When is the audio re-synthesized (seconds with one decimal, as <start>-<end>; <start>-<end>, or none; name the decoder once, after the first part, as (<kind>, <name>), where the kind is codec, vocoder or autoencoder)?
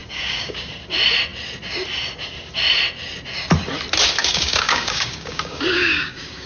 0.0-0.7 (codec, DAC); 4.2-6.5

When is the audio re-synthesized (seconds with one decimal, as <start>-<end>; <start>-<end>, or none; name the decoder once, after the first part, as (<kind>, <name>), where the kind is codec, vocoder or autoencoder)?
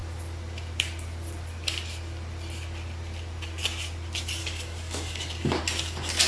4.4-5.6 (codec, DAC)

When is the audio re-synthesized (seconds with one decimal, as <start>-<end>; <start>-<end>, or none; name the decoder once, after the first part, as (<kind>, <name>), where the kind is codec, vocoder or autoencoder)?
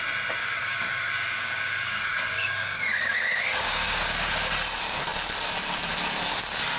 0.4-4.5 (codec, DAC)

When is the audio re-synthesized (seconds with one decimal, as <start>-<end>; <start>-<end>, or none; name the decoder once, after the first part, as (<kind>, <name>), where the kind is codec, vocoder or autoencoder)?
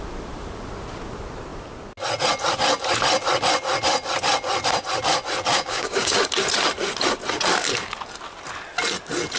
5.5-6.2 (codec, DAC)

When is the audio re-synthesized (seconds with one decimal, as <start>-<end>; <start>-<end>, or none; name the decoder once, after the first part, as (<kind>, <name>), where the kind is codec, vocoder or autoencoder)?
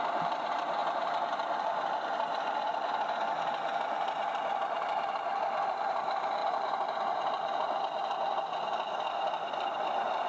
none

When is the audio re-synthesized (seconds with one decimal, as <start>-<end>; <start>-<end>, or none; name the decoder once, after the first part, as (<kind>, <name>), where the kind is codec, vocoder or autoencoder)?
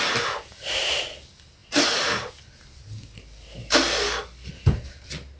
3.6-4.5 (codec, DAC)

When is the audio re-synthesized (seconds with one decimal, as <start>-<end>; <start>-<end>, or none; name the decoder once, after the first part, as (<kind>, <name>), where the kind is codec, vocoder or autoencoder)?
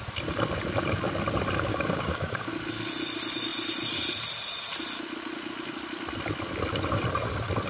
1.7-2.5 (codec, DAC)